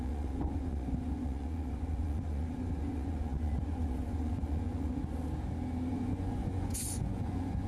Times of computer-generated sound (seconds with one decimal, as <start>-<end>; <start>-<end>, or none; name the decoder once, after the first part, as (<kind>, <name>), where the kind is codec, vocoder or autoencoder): 0.0-5.0 (vocoder, Vocos); 5.9-7.7

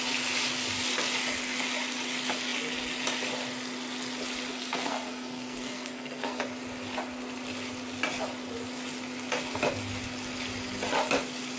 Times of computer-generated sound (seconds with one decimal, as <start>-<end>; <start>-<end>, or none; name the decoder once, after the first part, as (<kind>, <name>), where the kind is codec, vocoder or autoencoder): 4.5-6.4 (codec, SNAC)